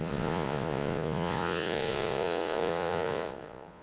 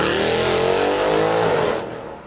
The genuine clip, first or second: second